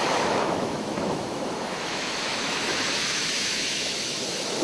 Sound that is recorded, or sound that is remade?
remade